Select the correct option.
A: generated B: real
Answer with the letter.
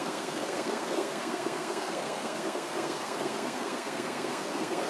A